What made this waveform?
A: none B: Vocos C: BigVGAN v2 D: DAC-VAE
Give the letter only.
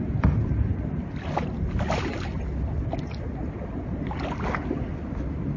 A